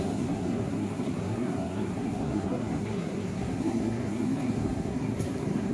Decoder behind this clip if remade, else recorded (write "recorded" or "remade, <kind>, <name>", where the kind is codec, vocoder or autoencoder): remade, codec, SNAC